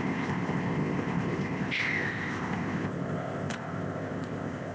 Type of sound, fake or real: fake